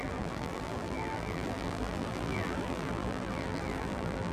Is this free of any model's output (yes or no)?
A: no